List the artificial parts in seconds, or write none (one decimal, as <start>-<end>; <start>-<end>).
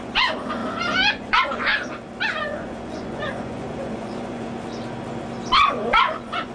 0.0-0.6; 1.1-1.7; 2.4-4.5; 5.7-6.5